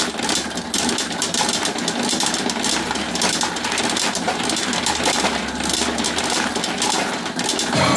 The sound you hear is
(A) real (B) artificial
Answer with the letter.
A